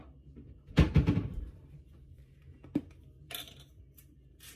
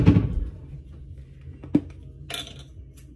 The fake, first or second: first